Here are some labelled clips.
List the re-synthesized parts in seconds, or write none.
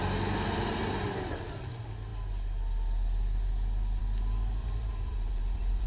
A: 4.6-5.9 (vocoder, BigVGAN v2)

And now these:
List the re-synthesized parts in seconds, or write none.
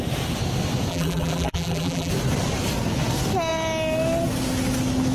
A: 0.9-2.1 (vocoder, BigVGAN v2)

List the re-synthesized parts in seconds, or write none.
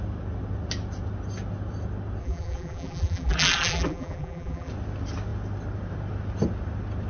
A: 2.2-4.7 (vocoder, BigVGAN v2)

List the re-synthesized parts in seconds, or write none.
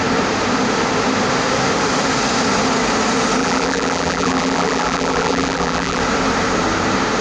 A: 3.4-6.0 (vocoder, BigVGAN v2)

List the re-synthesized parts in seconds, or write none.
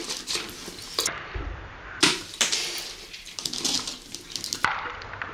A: 0.0-3.2 (vocoder, BigVGAN v2); 4.7-5.3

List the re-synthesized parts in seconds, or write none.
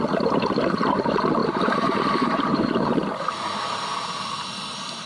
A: 0.0-3.0 (vocoder, BigVGAN v2)